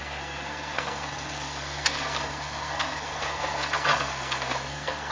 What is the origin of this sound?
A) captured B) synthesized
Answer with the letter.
B